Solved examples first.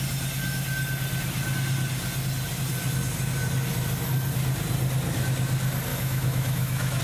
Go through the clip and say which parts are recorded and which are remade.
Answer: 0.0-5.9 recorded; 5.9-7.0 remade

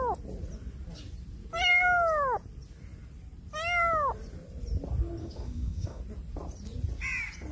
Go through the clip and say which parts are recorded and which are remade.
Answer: 0.0-5.2 recorded; 5.2-6.0 remade; 6.0-7.5 recorded

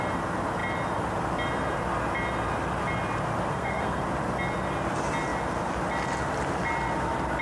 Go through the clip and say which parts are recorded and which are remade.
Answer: 0.0-3.5 recorded; 3.5-4.0 remade; 4.0-7.4 recorded